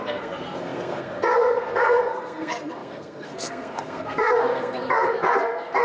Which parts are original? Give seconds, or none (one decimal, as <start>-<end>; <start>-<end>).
none